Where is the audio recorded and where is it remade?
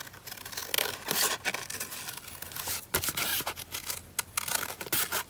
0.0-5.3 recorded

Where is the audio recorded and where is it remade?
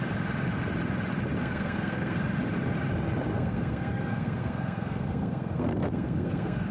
0.0-1.4 recorded; 1.4-2.2 remade; 2.2-3.3 recorded; 3.3-6.7 remade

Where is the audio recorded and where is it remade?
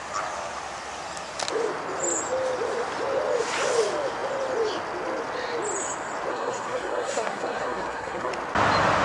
0.0-6.3 recorded; 6.3-8.3 remade; 8.3-9.0 recorded